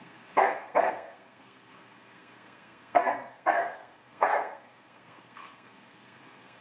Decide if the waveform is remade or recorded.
remade